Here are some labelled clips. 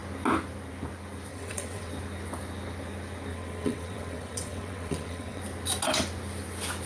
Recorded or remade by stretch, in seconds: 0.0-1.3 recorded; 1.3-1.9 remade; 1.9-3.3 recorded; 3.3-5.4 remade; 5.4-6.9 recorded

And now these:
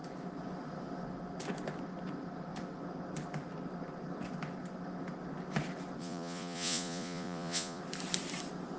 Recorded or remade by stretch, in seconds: 0.0-6.0 recorded; 6.0-7.8 remade; 7.8-8.8 recorded

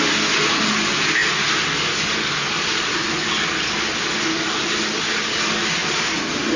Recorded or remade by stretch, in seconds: 0.0-6.6 recorded